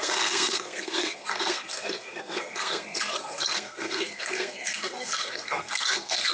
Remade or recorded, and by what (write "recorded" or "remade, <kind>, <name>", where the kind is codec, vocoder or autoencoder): remade, codec, SNAC